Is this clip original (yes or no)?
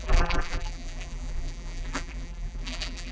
no